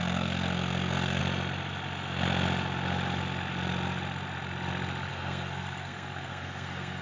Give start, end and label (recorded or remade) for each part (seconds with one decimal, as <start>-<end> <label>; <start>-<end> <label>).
0.0-1.2 remade; 1.2-5.1 recorded; 5.1-7.0 remade